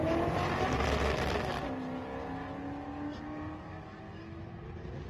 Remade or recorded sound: recorded